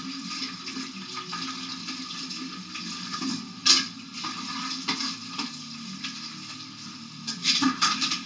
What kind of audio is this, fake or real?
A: real